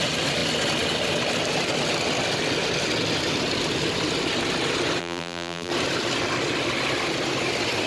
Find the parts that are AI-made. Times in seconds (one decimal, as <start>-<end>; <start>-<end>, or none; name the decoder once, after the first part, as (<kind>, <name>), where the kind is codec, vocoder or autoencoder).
5.0-5.7 (vocoder, BigVGAN v2)